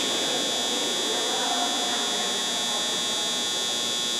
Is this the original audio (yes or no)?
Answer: yes